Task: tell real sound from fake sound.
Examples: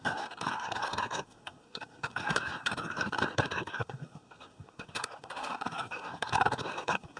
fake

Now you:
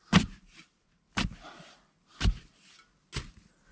real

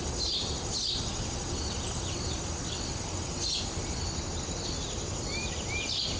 real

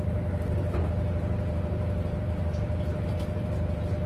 fake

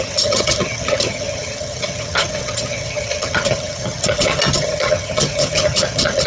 fake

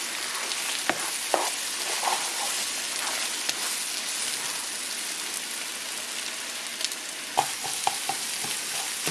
real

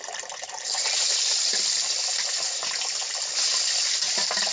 real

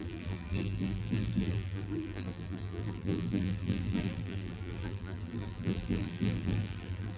fake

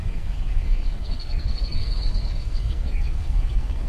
fake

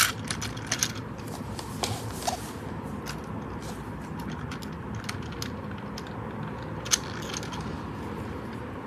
real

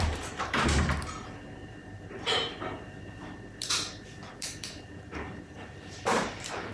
fake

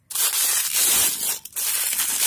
real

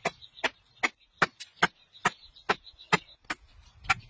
real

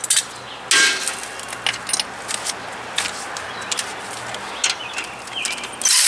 real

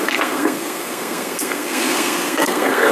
fake